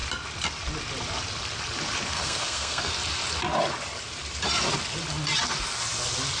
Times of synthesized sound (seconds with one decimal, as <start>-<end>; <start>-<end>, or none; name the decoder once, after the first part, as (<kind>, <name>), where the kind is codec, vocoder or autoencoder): 2.1-2.9 (codec, SNAC)